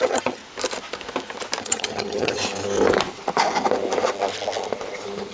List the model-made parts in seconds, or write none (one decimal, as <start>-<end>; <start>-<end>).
0.0-0.4; 1.6-2.4